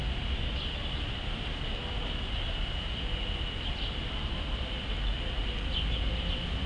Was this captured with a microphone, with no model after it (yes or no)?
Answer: yes